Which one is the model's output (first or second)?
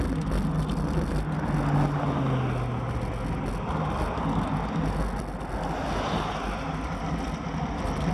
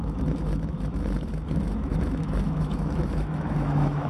second